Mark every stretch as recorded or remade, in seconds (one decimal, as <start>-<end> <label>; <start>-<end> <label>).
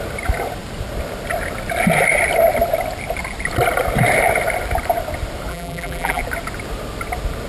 0.0-5.5 recorded; 5.5-6.2 remade; 6.2-7.5 recorded